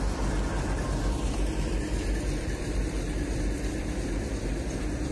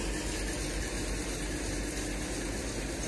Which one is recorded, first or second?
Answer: second